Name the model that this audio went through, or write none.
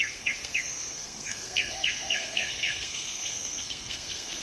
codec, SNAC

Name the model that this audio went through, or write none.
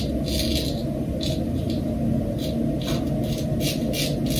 none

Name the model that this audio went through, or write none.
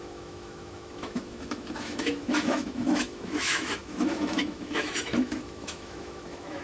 autoencoder, DAC-VAE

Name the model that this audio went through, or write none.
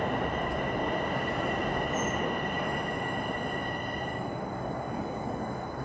none